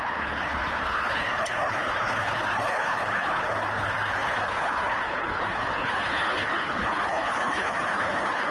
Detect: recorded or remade remade